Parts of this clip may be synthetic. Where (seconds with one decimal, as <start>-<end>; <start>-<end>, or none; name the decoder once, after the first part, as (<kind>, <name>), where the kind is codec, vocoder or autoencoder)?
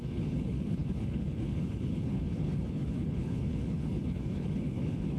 0.0-5.2 (codec, HILCodec)